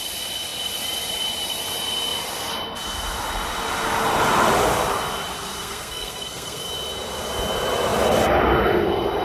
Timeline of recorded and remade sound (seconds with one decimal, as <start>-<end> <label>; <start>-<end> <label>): 0.0-5.6 recorded; 5.6-6.6 remade; 6.6-9.2 recorded